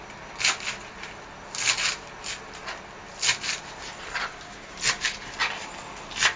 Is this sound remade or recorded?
recorded